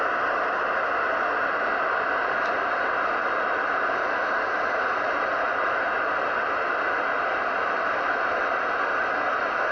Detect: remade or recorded recorded